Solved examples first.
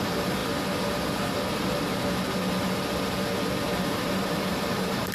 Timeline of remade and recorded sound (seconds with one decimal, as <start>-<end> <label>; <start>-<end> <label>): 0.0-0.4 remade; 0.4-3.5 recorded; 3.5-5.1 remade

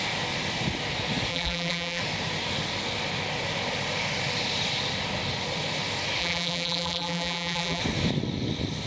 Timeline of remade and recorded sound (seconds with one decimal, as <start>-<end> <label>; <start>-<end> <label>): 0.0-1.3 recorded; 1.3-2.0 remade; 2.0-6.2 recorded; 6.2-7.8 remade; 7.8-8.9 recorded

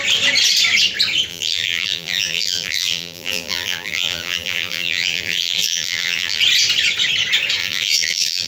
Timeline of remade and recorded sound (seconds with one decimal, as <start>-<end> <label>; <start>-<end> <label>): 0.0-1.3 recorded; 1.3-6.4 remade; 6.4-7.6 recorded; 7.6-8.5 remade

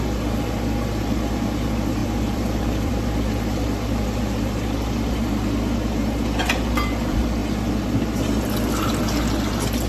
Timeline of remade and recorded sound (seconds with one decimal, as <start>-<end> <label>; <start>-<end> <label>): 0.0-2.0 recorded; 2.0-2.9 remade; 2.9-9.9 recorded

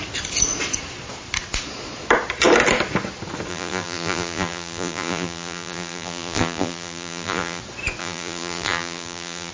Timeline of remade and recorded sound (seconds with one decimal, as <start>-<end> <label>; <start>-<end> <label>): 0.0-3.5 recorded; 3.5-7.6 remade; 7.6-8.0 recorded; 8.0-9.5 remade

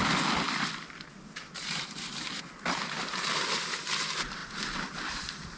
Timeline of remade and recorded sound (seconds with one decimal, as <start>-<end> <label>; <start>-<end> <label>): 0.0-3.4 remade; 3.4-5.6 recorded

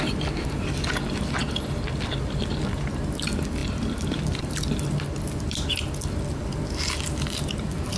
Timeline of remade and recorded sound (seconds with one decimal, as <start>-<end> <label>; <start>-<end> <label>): 0.0-8.0 recorded